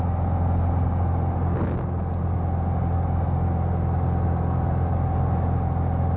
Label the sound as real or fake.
real